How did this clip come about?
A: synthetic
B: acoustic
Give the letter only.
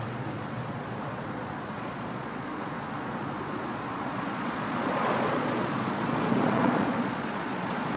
A